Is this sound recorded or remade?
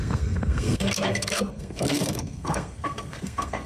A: remade